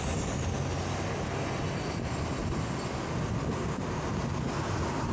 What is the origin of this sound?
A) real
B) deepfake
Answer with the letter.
A